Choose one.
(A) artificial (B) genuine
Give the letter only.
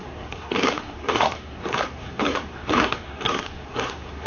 A